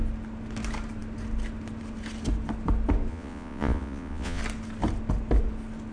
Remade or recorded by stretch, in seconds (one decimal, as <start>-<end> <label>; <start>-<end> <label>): 0.0-3.1 recorded; 3.1-4.4 remade; 4.4-5.9 recorded